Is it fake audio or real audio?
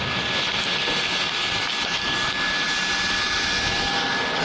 real